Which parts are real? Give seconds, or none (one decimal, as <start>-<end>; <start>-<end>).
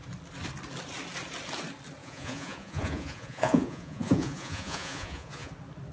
0.0-2.0; 5.5-5.9